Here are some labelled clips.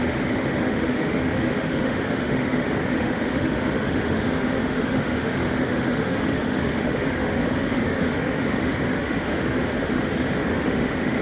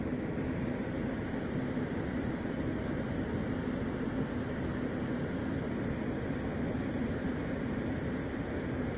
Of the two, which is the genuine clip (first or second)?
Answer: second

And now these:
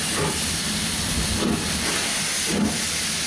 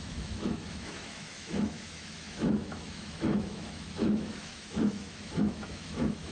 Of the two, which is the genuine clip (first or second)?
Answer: first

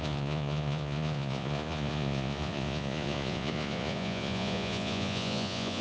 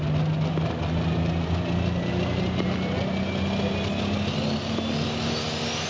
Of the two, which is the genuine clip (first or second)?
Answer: second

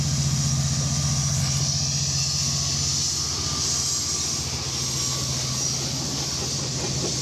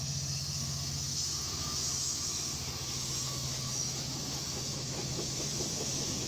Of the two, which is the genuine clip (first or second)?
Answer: first